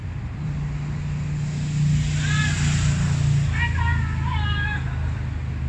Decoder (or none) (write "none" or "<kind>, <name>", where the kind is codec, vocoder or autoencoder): none